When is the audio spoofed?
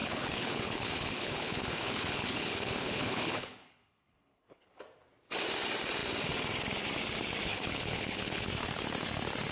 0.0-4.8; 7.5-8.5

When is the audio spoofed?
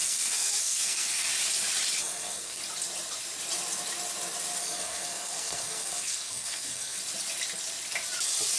0.0-1.3; 2.0-2.6; 4.6-7.0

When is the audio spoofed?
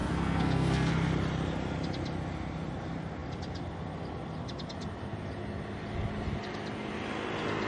0.0-0.9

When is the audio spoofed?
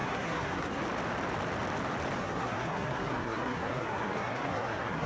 0.0-0.8; 2.2-5.1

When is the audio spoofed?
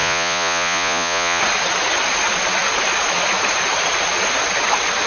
0.0-1.4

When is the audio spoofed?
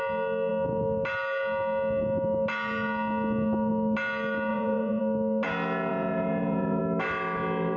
4.5-5.0; 5.9-6.8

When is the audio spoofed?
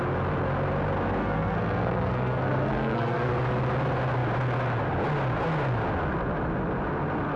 1.2-3.3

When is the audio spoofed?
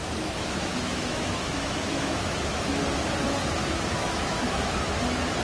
0.0-2.8; 3.6-5.0